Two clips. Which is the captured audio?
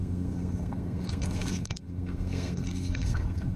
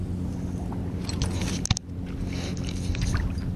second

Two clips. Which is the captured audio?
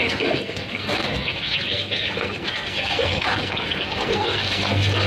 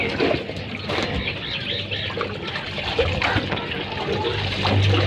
second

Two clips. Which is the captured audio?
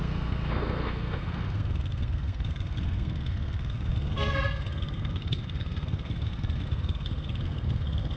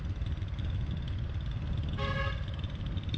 second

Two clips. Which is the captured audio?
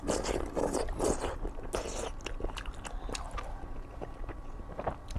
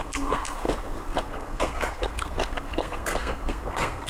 first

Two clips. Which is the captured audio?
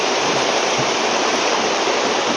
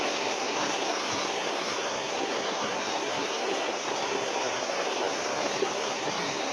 first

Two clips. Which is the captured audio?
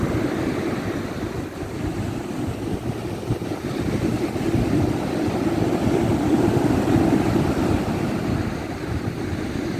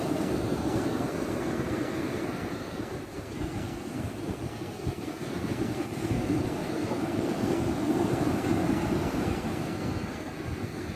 first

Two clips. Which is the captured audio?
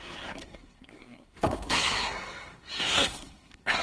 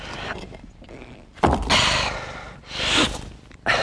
second